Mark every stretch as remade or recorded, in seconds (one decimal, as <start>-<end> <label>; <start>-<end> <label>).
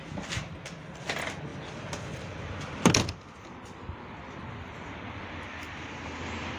0.0-6.6 recorded